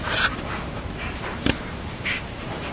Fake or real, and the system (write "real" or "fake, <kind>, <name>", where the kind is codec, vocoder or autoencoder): fake, vocoder, BigVGAN v2